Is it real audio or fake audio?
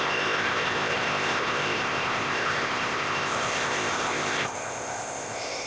fake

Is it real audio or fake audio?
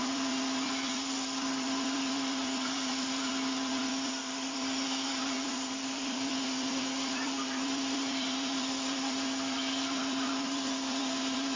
fake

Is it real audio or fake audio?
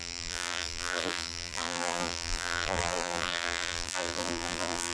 fake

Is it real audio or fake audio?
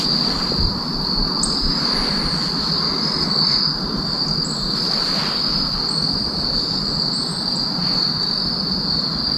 real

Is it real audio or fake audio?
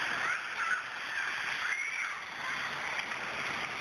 real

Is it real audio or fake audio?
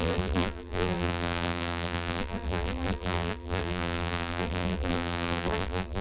fake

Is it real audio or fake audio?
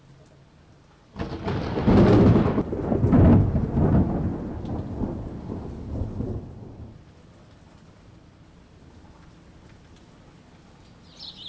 real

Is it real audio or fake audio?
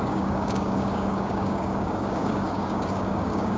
fake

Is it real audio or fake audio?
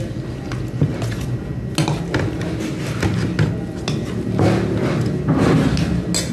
real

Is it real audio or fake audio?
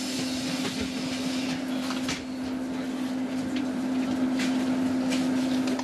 real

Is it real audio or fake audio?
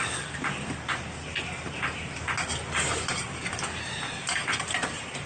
real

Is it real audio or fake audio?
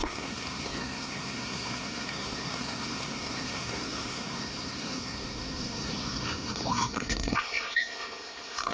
fake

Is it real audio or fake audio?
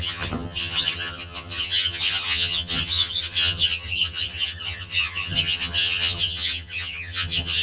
fake